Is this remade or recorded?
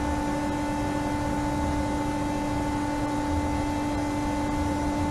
recorded